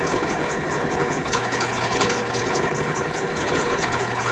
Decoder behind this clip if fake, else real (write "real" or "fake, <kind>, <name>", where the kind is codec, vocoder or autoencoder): fake, codec, HILCodec